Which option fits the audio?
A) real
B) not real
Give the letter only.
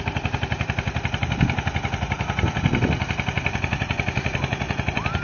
A